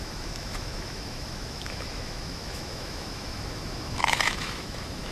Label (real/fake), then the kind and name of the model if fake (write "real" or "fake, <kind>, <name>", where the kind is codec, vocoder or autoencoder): fake, autoencoder, DAC-VAE